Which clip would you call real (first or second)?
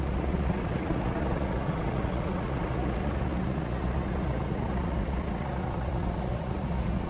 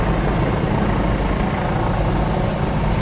second